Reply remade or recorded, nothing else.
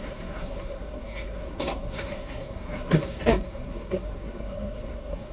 remade